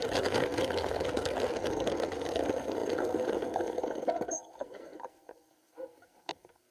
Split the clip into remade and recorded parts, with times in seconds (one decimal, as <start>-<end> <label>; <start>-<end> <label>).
0.0-6.7 remade